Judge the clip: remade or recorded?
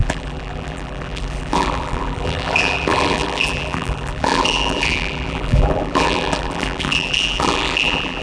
remade